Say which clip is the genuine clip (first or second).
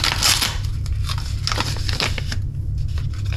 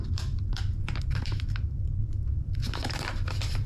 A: first